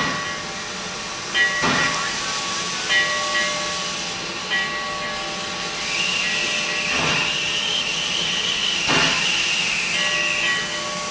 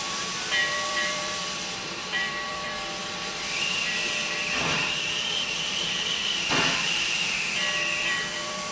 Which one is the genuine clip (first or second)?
first